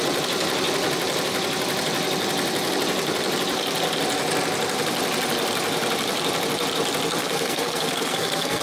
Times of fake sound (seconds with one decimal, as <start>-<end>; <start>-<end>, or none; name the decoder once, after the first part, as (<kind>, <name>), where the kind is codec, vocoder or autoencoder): 7.2-8.6 (codec, SNAC)